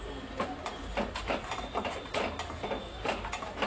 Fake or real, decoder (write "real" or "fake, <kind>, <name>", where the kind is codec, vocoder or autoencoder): fake, vocoder, BigVGAN v2